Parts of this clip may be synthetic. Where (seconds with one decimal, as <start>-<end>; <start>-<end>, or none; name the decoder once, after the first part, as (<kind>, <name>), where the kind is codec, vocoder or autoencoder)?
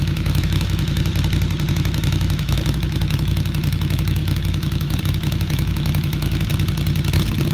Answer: 0.0-1.1 (autoencoder, DAC-VAE); 1.7-6.5